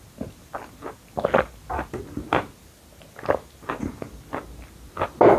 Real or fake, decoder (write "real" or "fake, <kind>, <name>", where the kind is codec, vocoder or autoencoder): real